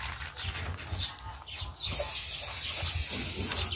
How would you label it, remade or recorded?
recorded